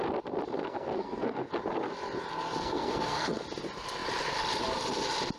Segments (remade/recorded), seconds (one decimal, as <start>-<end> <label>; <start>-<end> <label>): 0.0-0.6 recorded; 0.6-1.5 remade; 1.5-2.6 recorded; 2.6-3.4 remade; 3.4-5.4 recorded